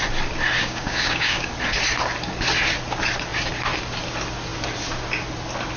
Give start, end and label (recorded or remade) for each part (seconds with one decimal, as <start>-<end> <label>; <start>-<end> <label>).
0.0-0.6 recorded; 0.6-1.5 remade; 1.5-5.8 recorded